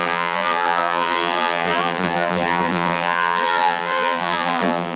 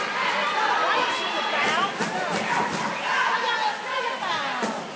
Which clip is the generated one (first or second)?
first